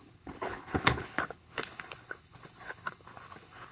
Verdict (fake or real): fake